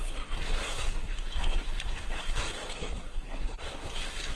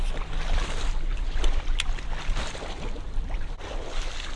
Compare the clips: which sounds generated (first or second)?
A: first